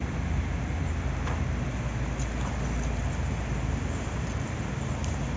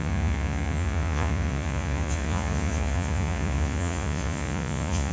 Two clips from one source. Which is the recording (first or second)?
first